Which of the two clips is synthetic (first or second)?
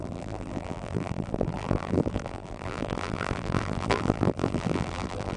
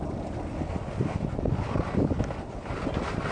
first